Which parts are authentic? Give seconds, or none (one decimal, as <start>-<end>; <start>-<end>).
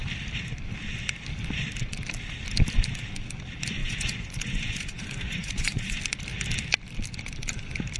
0.0-3.8; 6.0-8.0